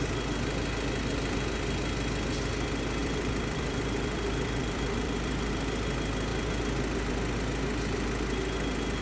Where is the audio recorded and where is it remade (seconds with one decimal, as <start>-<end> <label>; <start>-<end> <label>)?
0.0-3.0 recorded; 3.0-5.5 remade; 5.5-9.0 recorded